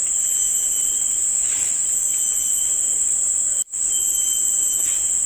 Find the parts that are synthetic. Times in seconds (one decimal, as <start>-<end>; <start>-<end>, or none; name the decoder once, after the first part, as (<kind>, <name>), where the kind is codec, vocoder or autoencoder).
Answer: none